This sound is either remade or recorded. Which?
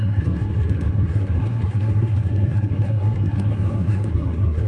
remade